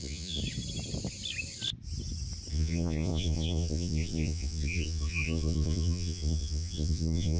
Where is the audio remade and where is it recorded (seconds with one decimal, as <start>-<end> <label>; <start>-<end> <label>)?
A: 0.0-0.4 remade; 0.4-2.5 recorded; 2.5-7.4 remade